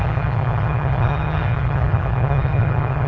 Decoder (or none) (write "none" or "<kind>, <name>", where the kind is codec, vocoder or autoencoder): vocoder, HiFi-GAN